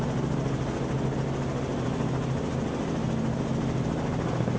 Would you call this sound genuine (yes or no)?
yes